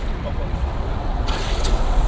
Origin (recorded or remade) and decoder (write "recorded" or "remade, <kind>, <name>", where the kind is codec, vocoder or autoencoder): remade, vocoder, WaveNeXt